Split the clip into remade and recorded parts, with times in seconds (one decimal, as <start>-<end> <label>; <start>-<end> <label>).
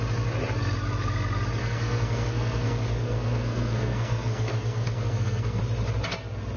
0.0-1.6 recorded; 1.6-5.6 remade; 5.6-6.6 recorded